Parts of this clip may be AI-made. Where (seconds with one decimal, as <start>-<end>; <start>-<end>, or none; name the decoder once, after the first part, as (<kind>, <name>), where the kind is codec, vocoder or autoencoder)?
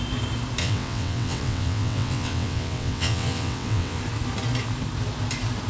0.6-4.0 (vocoder, WaveNeXt)